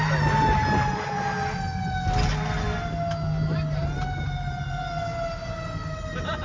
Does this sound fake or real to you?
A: real